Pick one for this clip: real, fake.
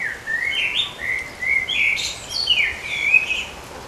real